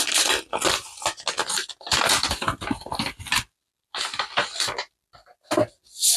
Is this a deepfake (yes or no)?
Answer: no